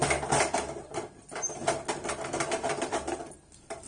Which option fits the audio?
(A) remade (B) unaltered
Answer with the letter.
B